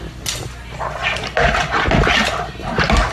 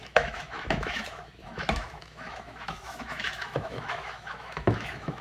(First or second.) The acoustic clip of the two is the first